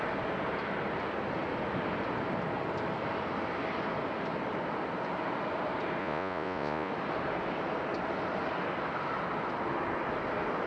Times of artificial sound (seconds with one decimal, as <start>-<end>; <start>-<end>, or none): 6.0-6.9